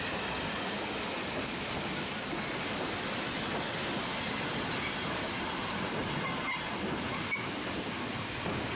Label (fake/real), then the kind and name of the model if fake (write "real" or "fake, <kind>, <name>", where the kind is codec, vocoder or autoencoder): real